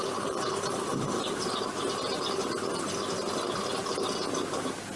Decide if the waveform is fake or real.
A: real